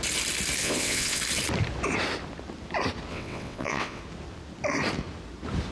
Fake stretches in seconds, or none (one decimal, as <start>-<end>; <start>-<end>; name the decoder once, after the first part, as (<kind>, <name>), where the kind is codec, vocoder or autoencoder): 0.6-1.2 (vocoder, WaveNeXt); 3.1-4.0